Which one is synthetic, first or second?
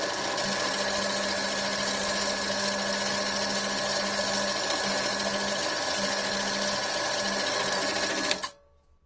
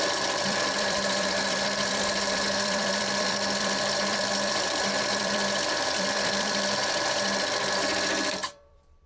second